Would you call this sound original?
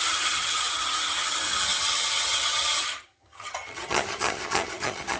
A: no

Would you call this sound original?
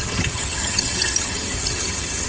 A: no